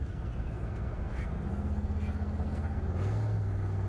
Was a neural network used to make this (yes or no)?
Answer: yes